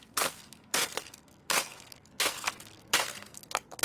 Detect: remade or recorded remade